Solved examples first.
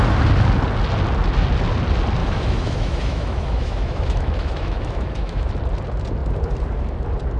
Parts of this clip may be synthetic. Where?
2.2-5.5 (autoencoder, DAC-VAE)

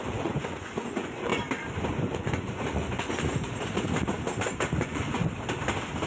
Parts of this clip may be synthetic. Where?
0.0-1.3 (vocoder, Vocos); 2.0-3.5; 4.8-5.2